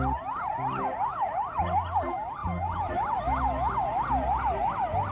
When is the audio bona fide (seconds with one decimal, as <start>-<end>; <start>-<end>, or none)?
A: 0.0-2.4; 3.2-5.1